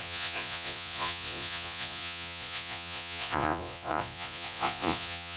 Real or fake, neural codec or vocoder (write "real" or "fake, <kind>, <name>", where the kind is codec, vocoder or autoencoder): fake, vocoder, Vocos